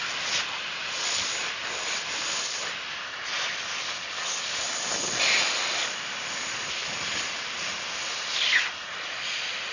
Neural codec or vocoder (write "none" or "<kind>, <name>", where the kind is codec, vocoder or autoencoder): none